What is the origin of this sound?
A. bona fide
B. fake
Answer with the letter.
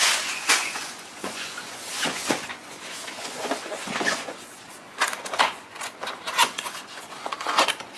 B